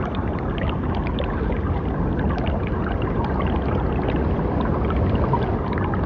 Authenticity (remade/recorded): recorded